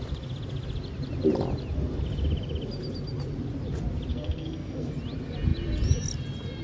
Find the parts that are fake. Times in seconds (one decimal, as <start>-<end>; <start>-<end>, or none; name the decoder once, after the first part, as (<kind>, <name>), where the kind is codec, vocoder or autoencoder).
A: 4.1-4.9 (codec, SNAC)